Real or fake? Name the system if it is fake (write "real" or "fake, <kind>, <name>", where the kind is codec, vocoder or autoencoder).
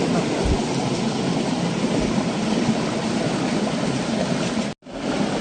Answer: real